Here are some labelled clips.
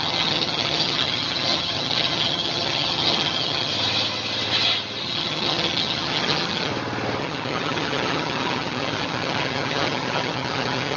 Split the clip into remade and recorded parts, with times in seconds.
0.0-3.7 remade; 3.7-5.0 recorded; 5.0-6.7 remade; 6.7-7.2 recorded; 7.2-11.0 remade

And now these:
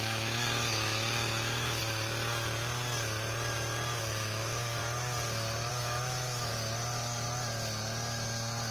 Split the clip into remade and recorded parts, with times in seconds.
0.0-1.8 remade; 1.8-4.0 recorded; 4.0-4.8 remade; 4.8-5.7 recorded; 5.7-6.5 remade; 6.5-8.7 recorded